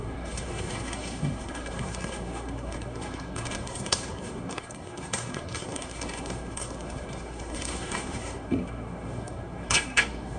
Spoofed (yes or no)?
yes